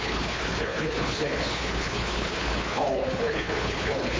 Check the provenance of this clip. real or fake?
fake